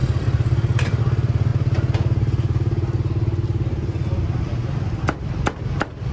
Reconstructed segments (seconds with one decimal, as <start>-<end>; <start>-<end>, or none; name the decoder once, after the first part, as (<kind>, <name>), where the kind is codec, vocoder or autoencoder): 0.0-1.0 (vocoder, BigVGAN v2)